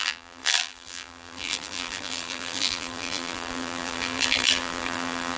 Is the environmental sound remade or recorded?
remade